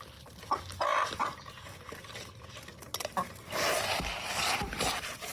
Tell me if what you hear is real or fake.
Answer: real